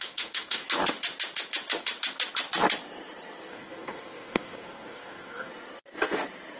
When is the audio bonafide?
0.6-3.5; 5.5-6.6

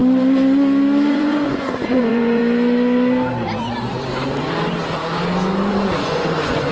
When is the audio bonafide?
0.0-1.1; 2.4-5.7

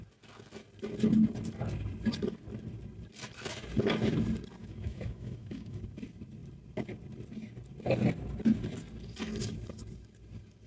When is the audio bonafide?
0.0-4.6; 5.8-10.7

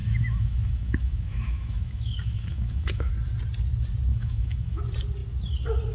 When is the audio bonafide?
3.1-4.1; 4.8-5.9

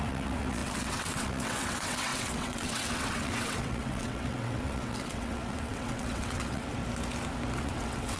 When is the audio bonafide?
6.8-7.6

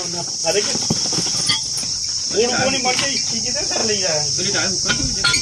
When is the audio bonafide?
3.8-4.9